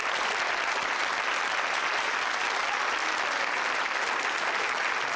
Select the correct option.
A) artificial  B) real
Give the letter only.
B